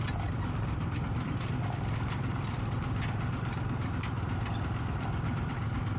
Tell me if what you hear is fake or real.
fake